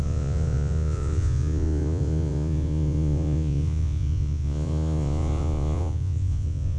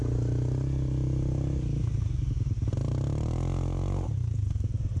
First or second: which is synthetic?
first